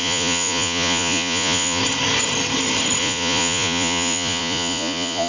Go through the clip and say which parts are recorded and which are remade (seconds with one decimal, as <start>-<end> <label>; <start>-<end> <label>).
0.0-1.8 remade; 1.8-3.0 recorded; 3.0-5.3 remade